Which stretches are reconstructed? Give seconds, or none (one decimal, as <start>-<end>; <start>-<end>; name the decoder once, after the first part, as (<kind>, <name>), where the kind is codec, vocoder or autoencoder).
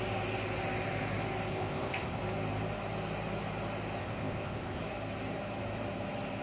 1.5-2.2 (codec, ZipCodec); 4.0-4.8